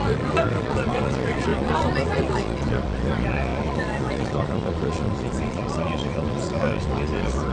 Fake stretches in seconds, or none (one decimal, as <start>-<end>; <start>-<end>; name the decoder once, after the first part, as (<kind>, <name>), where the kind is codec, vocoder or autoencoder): 0.0-7.5 (vocoder, Vocos)